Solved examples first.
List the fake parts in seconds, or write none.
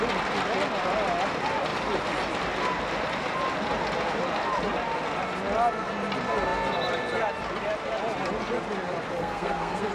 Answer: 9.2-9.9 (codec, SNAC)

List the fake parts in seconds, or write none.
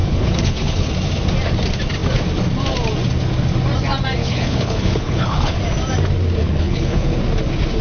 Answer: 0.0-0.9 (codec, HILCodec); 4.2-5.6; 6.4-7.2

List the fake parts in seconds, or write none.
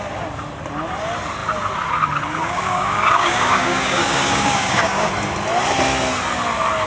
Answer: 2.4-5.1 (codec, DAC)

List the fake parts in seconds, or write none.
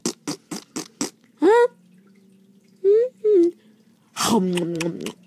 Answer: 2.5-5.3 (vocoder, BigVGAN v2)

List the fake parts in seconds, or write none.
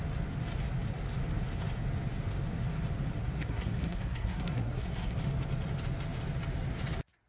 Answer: 3.2-5.2 (codec, SNAC)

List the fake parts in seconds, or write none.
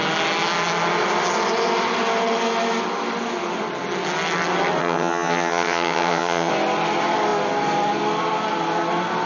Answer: 4.8-6.5 (vocoder, HiFi-GAN)